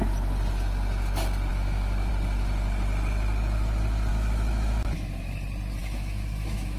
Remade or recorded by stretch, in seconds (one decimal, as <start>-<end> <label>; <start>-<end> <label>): 0.0-1.5 recorded; 1.5-2.1 remade; 2.1-4.1 recorded; 4.1-5.3 remade; 5.3-5.8 recorded; 5.8-6.8 remade